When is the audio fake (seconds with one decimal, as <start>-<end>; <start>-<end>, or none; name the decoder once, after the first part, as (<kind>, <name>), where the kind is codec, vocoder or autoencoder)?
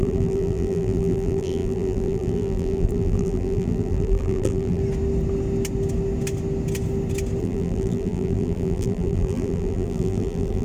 0.0-4.8 (vocoder, BigVGAN v2); 7.4-10.6